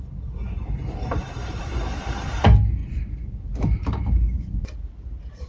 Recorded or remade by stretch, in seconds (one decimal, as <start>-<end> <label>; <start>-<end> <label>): 0.0-0.4 recorded; 0.4-2.3 remade; 2.3-5.5 recorded